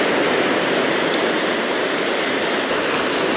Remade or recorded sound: recorded